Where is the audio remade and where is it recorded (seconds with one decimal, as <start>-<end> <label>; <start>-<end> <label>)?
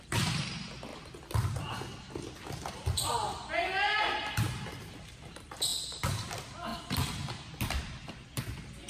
0.0-8.9 recorded